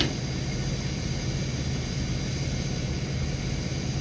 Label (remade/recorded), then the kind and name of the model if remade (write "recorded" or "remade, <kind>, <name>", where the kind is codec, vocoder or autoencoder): remade, vocoder, BigVGAN v2